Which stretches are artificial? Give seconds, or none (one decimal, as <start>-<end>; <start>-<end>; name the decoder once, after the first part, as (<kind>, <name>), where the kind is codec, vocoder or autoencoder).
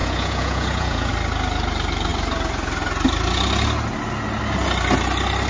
0.0-1.1 (vocoder, Vocos)